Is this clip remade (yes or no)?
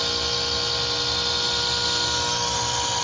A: no